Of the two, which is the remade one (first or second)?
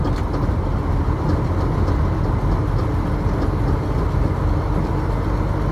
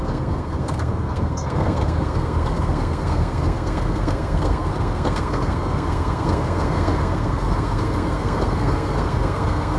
second